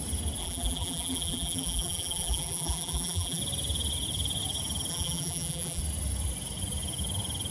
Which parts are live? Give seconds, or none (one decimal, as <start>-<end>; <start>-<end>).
0.0-0.4; 3.4-4.9; 5.8-7.5